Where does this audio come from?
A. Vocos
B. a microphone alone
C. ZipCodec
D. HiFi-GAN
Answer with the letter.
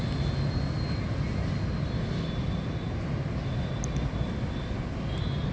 B